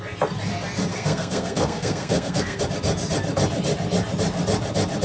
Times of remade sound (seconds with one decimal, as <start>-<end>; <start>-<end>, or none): 0.9-2.6